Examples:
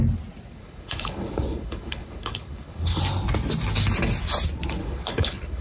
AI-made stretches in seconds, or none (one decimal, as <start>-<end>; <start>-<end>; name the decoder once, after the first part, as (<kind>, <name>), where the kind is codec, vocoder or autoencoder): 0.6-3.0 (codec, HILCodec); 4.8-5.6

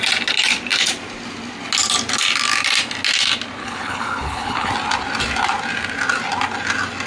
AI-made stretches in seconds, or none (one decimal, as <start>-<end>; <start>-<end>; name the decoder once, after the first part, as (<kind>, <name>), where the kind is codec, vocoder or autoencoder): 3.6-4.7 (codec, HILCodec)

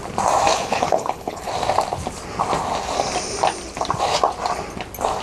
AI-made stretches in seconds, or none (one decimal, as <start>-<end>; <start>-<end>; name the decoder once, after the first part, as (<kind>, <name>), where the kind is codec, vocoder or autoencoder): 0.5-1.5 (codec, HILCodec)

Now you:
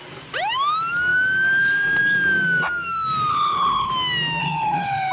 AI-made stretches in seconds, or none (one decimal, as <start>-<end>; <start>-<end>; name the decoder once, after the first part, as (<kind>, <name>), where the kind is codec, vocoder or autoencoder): 3.3-3.9 (codec, HILCodec); 4.4-5.1

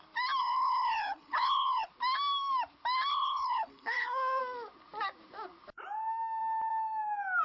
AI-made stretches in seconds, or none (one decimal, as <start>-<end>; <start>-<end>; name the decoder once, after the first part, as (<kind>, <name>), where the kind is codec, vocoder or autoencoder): 0.4-1.9 (codec, HILCodec); 3.1-4.4

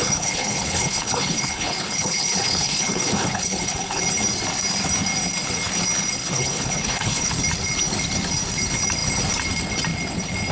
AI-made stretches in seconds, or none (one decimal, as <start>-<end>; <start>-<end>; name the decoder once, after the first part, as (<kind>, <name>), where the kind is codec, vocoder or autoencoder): 0.0-4.0 (codec, HILCodec); 6.2-7.3

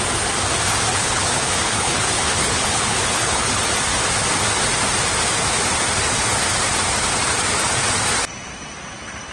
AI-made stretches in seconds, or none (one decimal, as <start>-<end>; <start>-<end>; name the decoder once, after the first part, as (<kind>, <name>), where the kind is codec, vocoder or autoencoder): 0.9-3.6 (codec, HILCodec)